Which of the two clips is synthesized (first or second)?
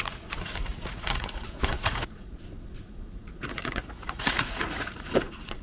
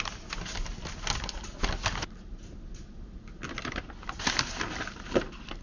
first